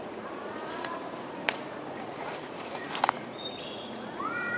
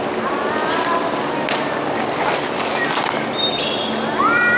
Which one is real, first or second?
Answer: second